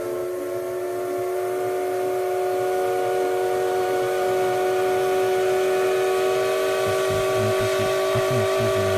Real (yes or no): yes